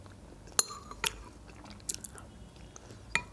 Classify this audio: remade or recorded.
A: recorded